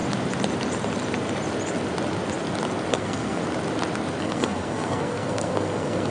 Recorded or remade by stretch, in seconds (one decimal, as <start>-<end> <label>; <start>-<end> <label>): 0.0-2.9 recorded; 2.9-3.4 remade; 3.4-4.2 recorded; 4.2-6.1 remade

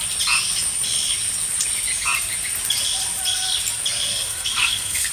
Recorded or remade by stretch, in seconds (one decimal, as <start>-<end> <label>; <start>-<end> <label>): 0.0-4.1 recorded; 4.1-5.1 remade